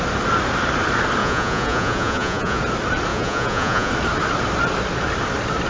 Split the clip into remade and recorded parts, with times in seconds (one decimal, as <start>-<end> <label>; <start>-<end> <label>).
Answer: 0.0-1.2 recorded; 1.2-2.6 remade; 2.6-3.1 recorded; 3.1-3.9 remade; 3.9-5.7 recorded